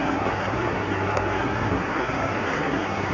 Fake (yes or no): yes